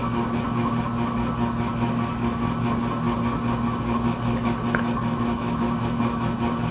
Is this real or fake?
real